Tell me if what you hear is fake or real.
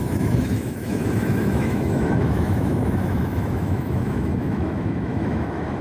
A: fake